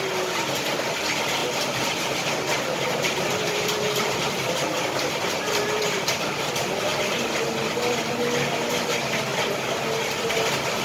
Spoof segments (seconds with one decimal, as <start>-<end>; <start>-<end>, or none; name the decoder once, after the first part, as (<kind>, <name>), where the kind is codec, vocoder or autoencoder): 1.4-6.5 (vocoder, BigVGAN v2)